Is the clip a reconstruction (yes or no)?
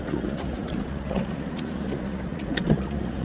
yes